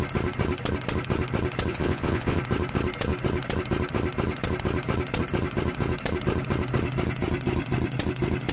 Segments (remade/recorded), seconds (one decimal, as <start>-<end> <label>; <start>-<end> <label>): 0.0-1.7 recorded; 1.7-2.4 remade; 2.4-8.5 recorded

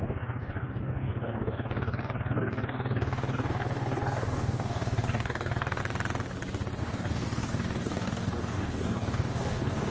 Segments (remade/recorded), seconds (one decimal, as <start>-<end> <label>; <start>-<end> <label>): 0.0-5.8 remade; 5.8-6.8 recorded; 6.8-9.9 remade

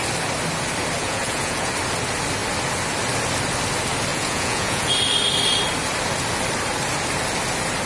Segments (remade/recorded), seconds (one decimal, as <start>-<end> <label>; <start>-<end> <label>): 0.0-1.0 recorded; 1.0-1.7 remade; 1.7-4.1 recorded; 4.1-4.9 remade; 4.9-7.9 recorded

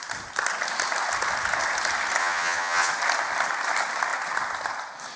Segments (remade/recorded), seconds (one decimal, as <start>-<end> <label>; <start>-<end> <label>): 0.0-2.2 recorded; 2.2-2.9 remade; 2.9-5.2 recorded

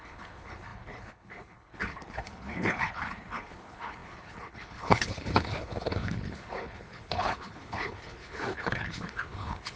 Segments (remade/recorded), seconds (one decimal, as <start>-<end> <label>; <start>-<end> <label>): 0.0-9.8 remade

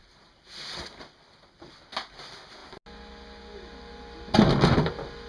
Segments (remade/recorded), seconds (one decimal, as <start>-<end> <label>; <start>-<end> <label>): 0.0-5.3 recorded

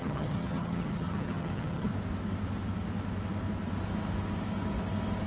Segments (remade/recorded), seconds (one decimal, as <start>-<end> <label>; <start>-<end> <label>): 0.0-1.9 remade; 1.9-5.3 recorded

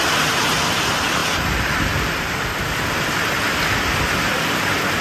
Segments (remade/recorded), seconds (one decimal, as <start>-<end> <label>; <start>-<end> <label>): 0.0-5.0 recorded